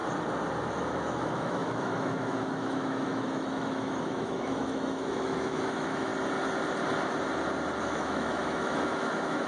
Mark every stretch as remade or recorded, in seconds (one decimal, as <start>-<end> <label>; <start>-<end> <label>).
0.0-0.8 recorded; 0.8-6.1 remade; 6.1-7.8 recorded; 7.8-9.5 remade